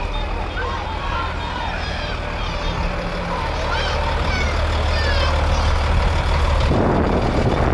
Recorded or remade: recorded